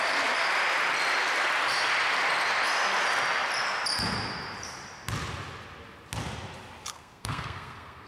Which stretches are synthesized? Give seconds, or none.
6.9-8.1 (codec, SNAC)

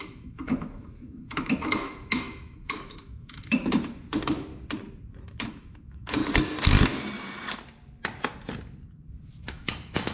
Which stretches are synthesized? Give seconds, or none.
0.0-4.5 (autoencoder, DAC-VAE); 5.3-6.2; 9.5-10.1

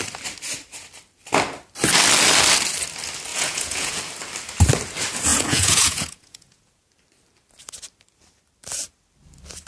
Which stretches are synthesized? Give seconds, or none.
3.3-4.0 (vocoder, Vocos); 5.3-6.9

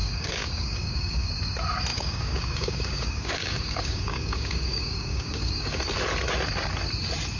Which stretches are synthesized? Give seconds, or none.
0.0-1.3 (codec, DAC); 1.9-5.8

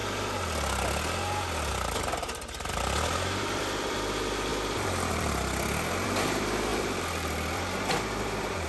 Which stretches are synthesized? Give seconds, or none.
1.7-8.7 (vocoder, BigVGAN v2)

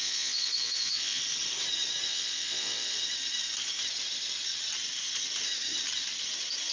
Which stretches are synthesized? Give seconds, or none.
0.0-1.2 (vocoder, Vocos); 2.1-3.0

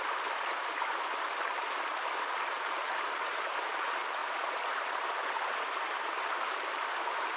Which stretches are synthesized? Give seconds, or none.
none